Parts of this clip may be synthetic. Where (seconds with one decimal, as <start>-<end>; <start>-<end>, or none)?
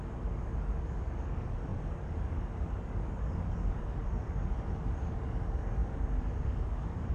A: 0.0-7.1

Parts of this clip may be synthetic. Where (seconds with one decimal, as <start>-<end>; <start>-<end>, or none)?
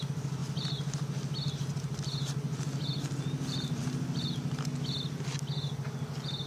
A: none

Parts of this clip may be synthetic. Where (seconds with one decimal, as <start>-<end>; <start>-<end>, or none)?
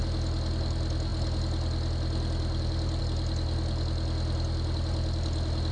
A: none